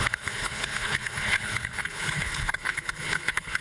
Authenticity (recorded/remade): remade